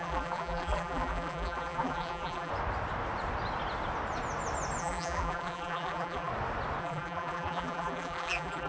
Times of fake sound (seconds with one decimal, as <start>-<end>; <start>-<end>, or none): 0.0-2.5; 4.8-6.3; 6.8-8.7